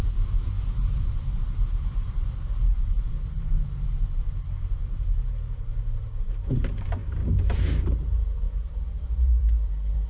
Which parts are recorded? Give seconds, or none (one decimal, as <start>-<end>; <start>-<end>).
5.7-6.5; 7.2-7.8